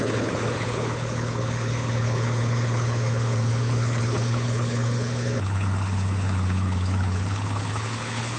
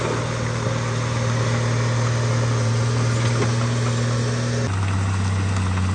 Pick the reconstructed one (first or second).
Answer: first